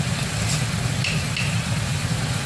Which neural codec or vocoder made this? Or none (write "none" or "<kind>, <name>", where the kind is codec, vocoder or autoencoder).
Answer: none